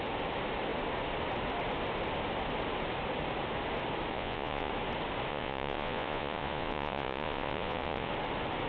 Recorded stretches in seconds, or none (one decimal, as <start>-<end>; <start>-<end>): 0.0-4.1; 4.7-5.3; 8.1-8.7